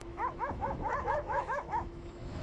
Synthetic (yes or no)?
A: yes